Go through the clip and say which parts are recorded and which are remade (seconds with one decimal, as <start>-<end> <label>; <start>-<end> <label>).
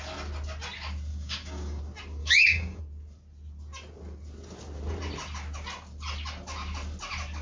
0.0-1.1 recorded; 1.1-1.8 remade; 1.8-2.2 recorded; 2.2-2.8 remade; 2.8-7.4 recorded